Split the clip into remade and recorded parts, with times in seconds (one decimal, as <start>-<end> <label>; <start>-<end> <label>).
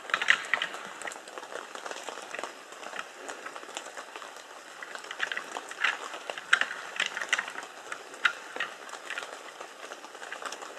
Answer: 0.0-10.8 recorded